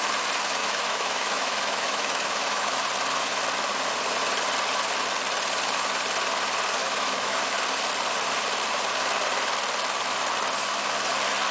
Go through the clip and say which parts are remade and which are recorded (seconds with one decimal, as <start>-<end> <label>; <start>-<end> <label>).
0.0-0.6 recorded; 0.6-2.8 remade; 2.8-6.8 recorded; 6.8-7.4 remade; 7.4-11.5 recorded